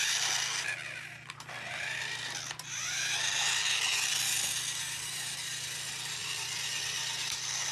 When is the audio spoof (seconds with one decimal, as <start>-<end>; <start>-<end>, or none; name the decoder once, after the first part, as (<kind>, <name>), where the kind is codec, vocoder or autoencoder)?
0.0-7.7 (vocoder, BigVGAN v2)